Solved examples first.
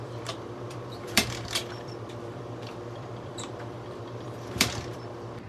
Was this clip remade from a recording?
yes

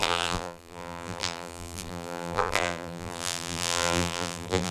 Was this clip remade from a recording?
yes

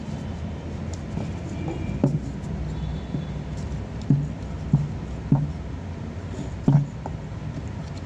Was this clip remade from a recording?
no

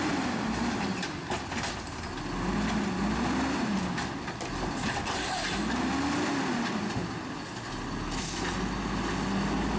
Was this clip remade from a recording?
no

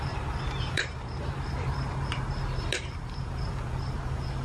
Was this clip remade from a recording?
yes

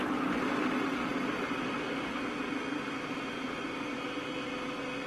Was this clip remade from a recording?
no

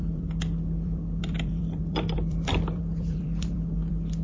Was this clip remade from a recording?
yes